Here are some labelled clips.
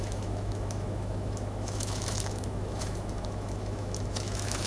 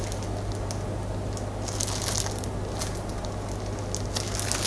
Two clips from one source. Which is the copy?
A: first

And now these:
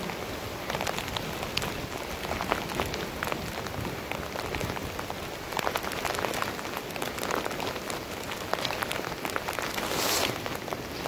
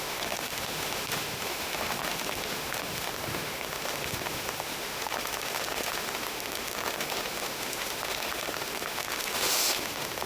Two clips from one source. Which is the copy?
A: second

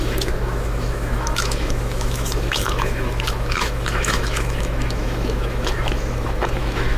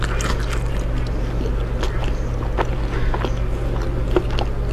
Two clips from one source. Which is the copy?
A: first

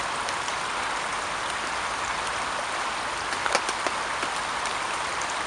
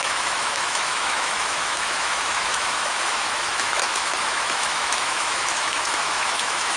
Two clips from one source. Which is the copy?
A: second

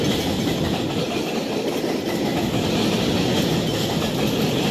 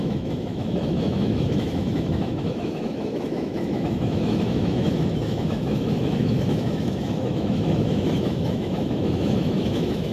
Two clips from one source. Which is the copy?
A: second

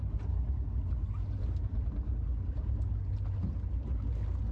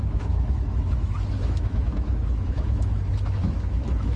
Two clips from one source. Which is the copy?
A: second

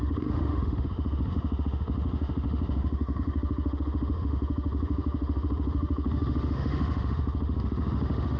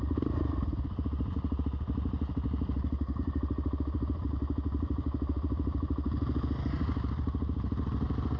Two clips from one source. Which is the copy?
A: first